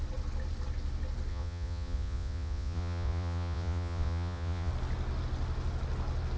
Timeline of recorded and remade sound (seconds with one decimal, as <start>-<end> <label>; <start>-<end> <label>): 0.0-1.3 recorded; 1.3-4.7 remade; 4.7-6.4 recorded